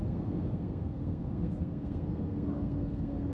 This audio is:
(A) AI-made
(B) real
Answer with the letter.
A